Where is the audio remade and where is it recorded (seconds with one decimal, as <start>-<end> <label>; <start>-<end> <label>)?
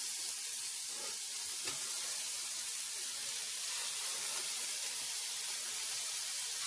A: 0.0-3.2 remade; 3.2-3.8 recorded; 3.8-6.1 remade; 6.1-6.7 recorded